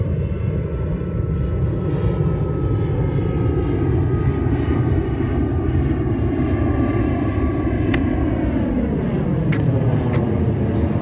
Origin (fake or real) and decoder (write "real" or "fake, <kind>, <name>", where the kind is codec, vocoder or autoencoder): real